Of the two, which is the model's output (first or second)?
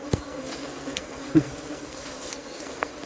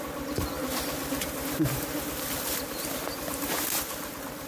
first